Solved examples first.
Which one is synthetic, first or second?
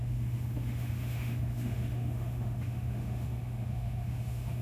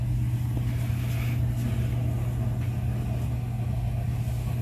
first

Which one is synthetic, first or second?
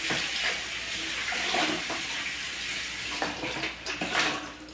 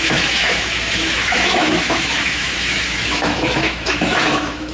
second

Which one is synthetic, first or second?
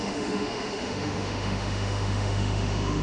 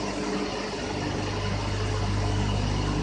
first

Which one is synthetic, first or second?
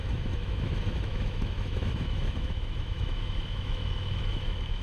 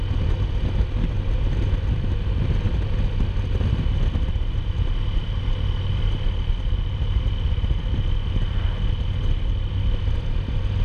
first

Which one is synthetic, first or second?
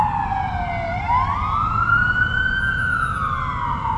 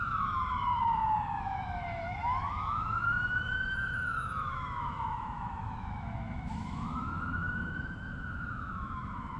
second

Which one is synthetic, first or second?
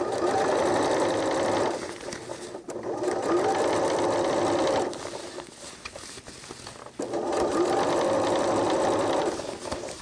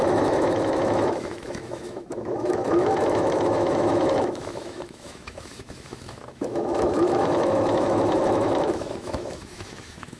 second